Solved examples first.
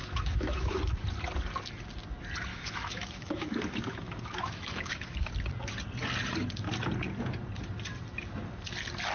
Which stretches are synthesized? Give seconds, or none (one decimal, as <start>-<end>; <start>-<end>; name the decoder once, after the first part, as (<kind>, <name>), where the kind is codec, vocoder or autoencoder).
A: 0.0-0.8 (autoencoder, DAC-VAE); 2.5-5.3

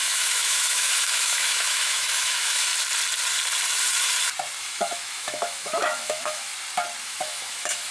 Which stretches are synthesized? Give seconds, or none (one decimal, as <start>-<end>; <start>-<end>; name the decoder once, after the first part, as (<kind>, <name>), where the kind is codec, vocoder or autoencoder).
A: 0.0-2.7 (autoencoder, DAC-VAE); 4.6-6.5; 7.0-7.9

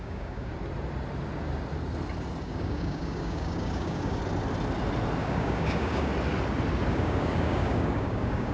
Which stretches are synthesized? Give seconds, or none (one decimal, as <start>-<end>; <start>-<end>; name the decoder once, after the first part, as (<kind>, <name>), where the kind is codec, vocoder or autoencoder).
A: 0.0-0.5 (codec, DAC); 2.4-4.2; 5.2-6.1; 6.9-8.5

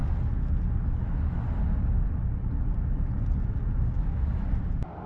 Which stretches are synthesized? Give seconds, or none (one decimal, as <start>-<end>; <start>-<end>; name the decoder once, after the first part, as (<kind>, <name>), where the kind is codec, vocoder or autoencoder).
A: none

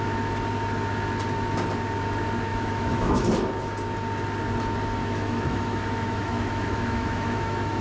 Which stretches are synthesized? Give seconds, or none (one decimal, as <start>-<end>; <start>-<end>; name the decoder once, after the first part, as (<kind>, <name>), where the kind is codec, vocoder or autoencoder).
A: 2.5-3.3 (autoencoder, DAC-VAE); 5.0-7.8

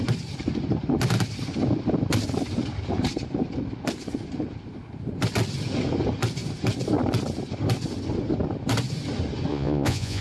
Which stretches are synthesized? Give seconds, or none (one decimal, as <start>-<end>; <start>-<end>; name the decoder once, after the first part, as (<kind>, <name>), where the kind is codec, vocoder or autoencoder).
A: 9.5-10.2 (vocoder, Vocos)